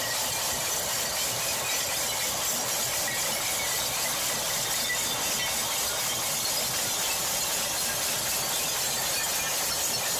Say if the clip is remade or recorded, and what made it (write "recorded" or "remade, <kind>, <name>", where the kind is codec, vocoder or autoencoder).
recorded